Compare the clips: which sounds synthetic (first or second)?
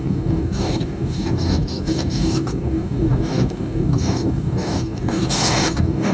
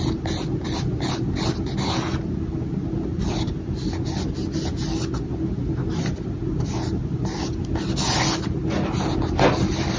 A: first